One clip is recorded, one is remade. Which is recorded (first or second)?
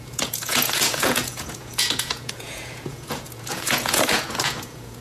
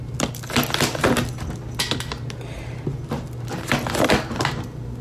second